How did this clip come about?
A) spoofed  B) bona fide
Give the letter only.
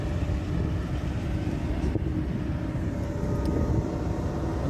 B